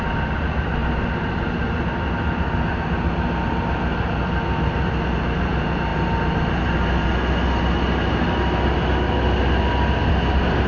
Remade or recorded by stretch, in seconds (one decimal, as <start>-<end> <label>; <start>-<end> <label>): 0.0-10.7 recorded